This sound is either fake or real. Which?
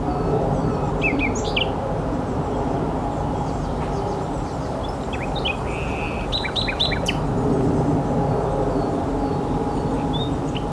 real